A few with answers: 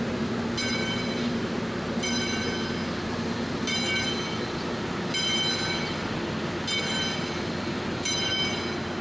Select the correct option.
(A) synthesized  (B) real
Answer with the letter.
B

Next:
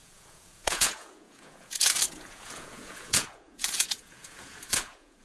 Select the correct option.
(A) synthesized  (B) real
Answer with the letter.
A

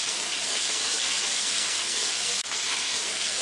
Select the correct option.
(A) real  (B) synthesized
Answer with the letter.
B